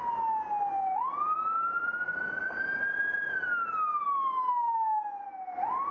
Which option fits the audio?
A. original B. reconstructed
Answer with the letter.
A